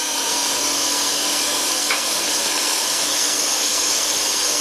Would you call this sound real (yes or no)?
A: no